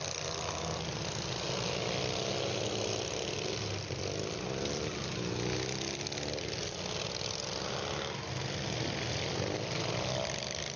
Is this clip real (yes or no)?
yes